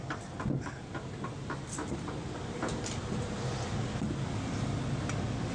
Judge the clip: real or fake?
real